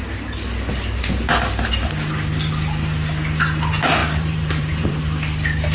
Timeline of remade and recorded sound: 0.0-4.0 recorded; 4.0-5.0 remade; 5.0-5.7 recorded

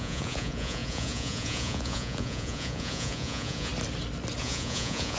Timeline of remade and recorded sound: 0.0-3.7 remade; 3.7-4.4 recorded; 4.4-5.2 remade

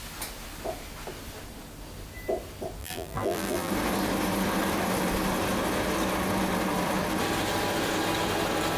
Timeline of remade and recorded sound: 0.0-2.8 recorded; 2.8-3.7 remade; 3.7-8.8 recorded

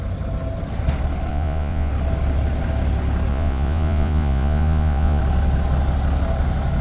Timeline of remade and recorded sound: 0.0-1.3 recorded; 1.3-1.9 remade; 1.9-3.3 recorded; 3.3-5.2 remade; 5.2-6.8 recorded